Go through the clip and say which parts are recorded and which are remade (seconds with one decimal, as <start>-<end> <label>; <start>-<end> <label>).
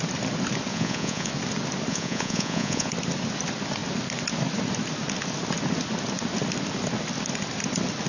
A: 0.0-0.7 recorded; 0.7-1.3 remade; 1.3-1.9 recorded; 1.9-2.9 remade; 2.9-8.1 recorded